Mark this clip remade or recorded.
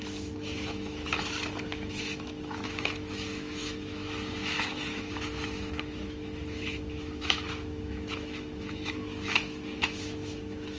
remade